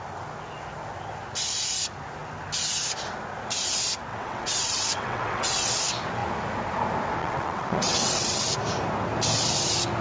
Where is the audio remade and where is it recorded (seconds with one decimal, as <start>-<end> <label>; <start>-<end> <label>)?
0.0-4.1 recorded; 4.1-5.7 remade; 5.7-7.2 recorded; 7.2-8.4 remade; 8.4-10.0 recorded